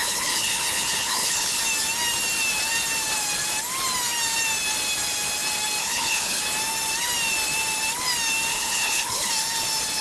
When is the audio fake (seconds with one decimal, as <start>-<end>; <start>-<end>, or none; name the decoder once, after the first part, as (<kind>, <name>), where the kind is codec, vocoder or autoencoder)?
0.0-1.6 (codec, HILCodec); 5.8-6.4; 8.5-9.3